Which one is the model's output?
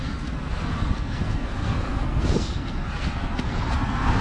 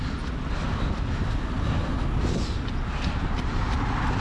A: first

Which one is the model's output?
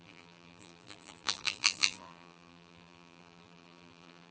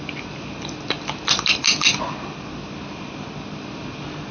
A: first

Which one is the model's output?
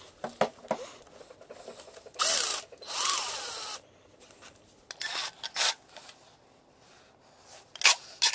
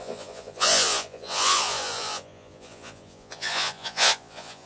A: second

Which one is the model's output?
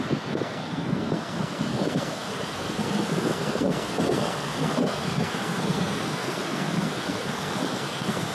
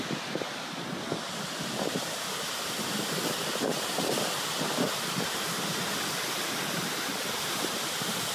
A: first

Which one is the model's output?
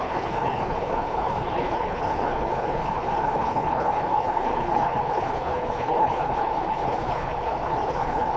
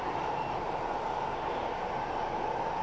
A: first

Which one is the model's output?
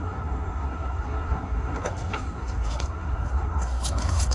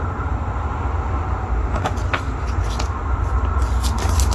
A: first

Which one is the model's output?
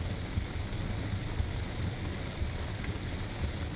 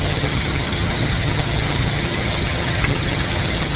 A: second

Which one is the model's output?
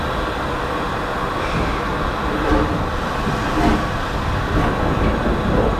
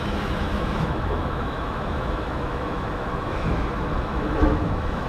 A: second